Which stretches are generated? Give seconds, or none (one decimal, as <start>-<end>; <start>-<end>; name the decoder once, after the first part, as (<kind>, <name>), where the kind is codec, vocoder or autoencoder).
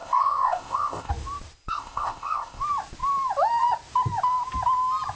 0.0-1.1 (codec, ZipCodec); 1.7-2.6